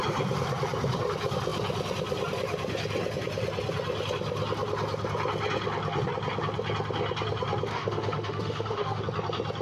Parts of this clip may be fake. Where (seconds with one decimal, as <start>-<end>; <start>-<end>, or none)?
7.7-9.0